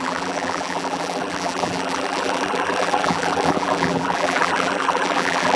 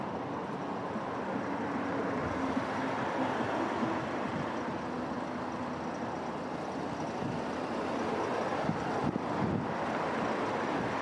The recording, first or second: second